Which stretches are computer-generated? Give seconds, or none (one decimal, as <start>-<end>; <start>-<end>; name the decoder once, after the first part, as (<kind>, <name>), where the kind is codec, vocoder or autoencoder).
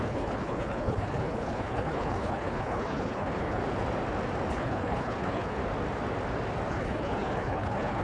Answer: 0.0-3.6 (codec, HILCodec); 4.5-5.6; 6.7-8.0